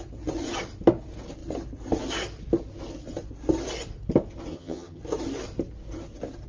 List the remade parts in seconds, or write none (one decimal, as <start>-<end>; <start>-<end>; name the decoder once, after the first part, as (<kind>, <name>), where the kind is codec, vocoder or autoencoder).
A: 4.5-5.0 (vocoder, HiFi-GAN)